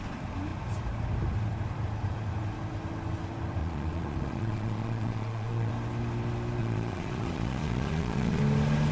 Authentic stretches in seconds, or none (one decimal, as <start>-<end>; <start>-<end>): 0.0-3.6; 5.7-6.6; 8.4-8.9